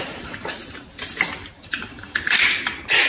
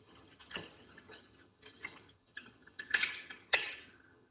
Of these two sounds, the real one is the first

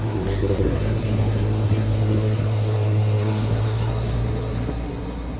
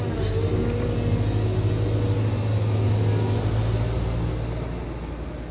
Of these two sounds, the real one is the second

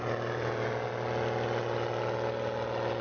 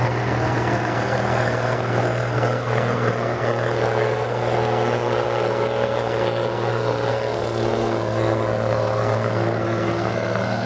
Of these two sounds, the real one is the first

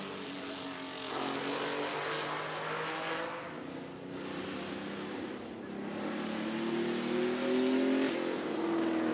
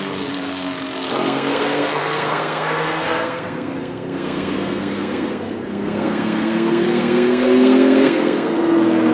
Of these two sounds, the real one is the first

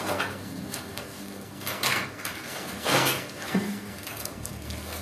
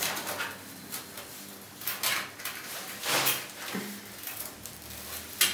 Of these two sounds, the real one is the second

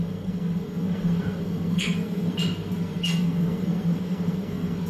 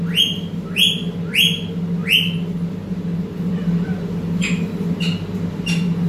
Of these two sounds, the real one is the second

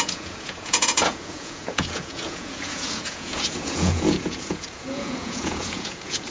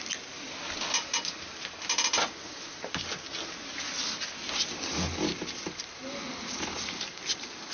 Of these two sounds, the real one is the second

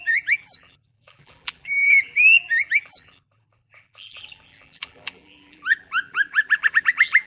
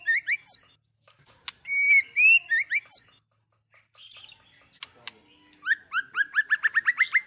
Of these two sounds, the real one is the second